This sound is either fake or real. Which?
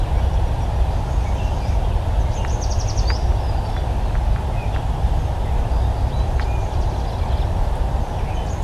real